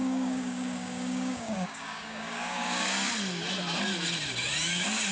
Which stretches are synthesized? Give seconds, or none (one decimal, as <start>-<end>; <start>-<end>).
0.0-3.1